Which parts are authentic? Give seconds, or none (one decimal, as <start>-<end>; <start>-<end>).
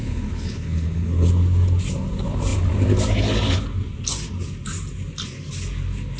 1.3-6.2